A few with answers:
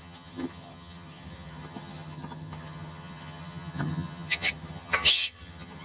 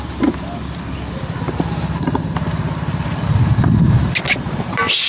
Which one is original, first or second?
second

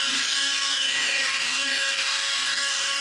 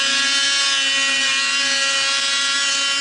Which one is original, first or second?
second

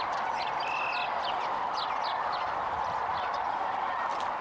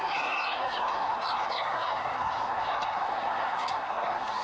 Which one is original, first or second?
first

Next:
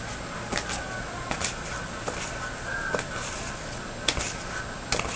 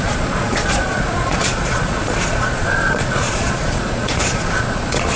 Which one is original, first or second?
first